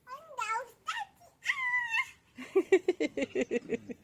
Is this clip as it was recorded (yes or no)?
yes